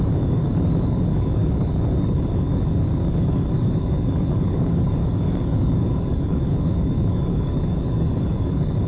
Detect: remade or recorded remade